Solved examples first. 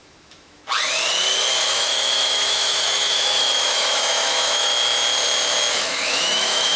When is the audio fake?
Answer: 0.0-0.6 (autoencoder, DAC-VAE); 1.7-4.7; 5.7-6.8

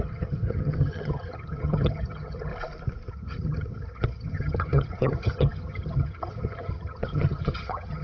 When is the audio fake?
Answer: 0.0-2.5 (vocoder, HiFi-GAN); 3.1-8.0

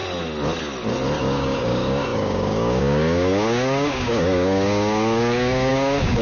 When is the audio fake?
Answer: 1.2-6.2 (codec, DAC)

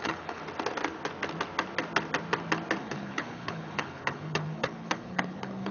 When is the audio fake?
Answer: 0.0-0.4 (codec, HILCodec); 2.8-5.7

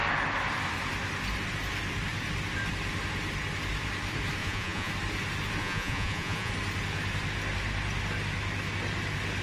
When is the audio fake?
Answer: 4.4-4.9 (vocoder, Vocos); 5.6-6.5

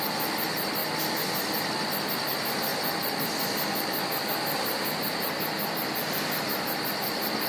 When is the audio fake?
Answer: none